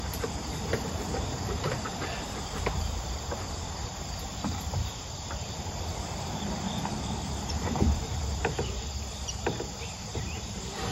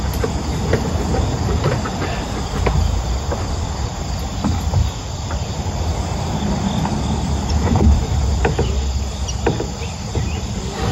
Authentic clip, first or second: second